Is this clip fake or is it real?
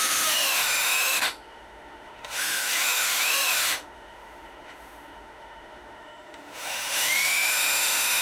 fake